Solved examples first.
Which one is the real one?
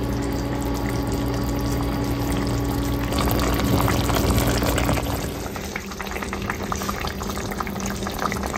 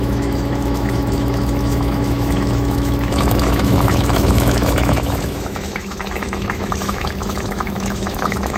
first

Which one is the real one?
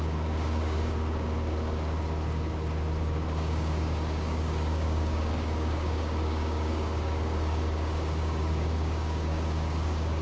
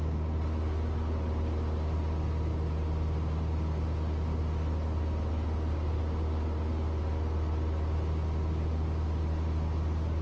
second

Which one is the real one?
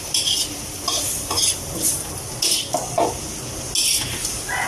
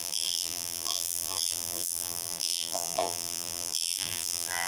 first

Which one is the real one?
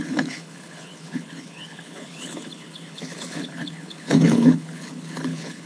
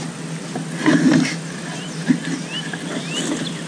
second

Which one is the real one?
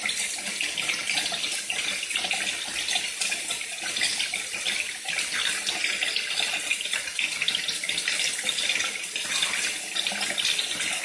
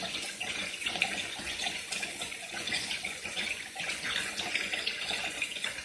first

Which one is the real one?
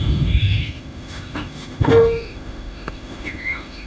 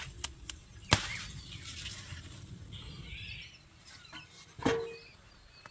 second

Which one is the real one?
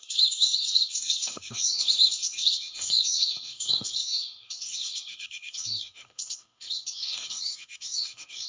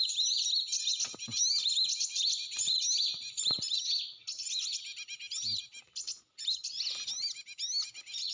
second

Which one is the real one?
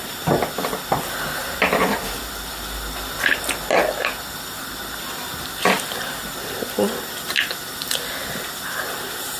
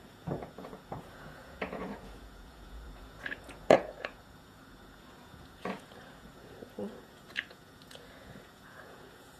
first